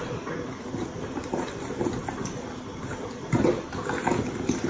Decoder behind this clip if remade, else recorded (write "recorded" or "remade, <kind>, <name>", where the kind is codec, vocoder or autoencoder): recorded